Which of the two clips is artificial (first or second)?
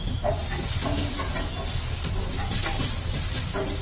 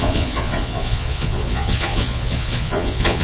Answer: second